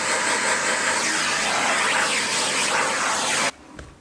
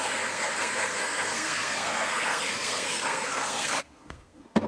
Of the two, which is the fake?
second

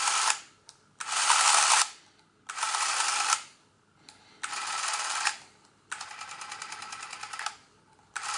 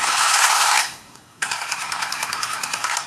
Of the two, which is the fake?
second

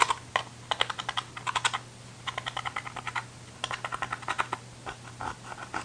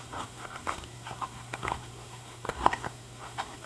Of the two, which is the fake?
second